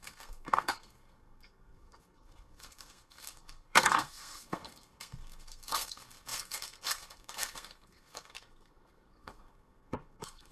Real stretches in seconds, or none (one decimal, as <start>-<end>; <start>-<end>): none